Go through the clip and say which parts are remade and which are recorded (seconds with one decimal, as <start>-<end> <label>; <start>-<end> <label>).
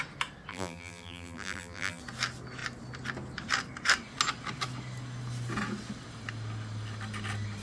0.0-0.5 recorded; 0.5-2.0 remade; 2.0-7.6 recorded